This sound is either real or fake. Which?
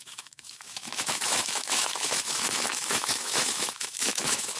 fake